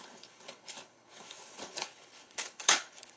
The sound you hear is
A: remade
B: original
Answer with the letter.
A